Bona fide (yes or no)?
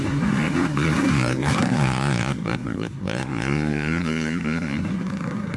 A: no